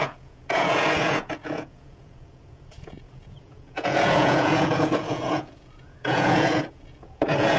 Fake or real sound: fake